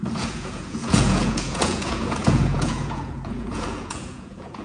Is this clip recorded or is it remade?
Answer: remade